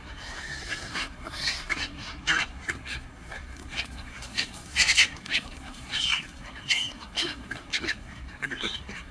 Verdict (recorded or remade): remade